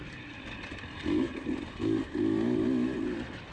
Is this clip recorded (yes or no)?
yes